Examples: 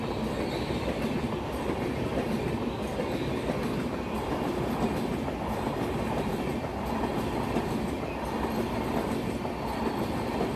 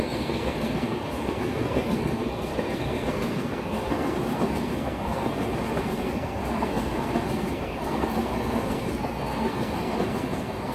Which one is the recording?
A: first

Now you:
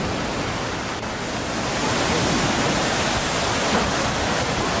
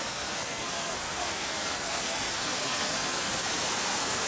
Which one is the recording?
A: first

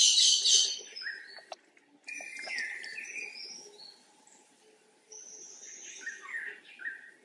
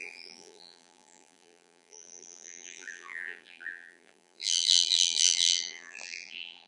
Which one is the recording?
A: first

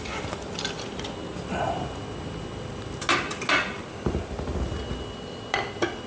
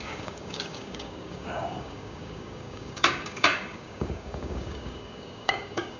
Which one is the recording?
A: first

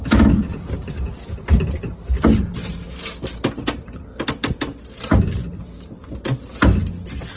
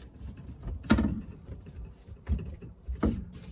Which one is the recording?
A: first